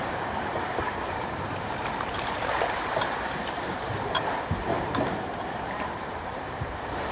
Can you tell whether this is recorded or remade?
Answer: remade